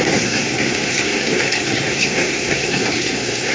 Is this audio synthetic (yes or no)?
yes